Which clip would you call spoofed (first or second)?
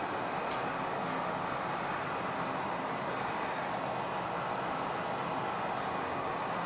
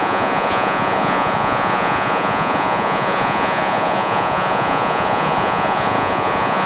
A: second